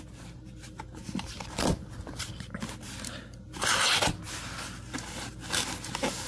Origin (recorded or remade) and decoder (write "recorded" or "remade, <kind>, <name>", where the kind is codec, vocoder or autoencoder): recorded